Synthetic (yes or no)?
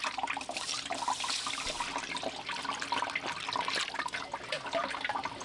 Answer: no